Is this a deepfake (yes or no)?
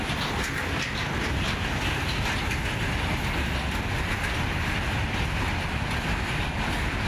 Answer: no